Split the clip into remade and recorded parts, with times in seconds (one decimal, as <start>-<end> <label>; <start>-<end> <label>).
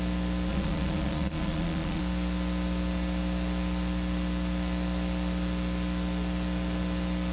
0.0-0.5 recorded; 0.5-2.0 remade; 2.0-7.3 recorded